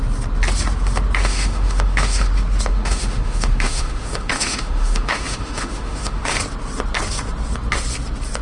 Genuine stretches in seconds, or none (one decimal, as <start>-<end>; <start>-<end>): 0.0-1.2; 2.3-2.7; 6.4-8.4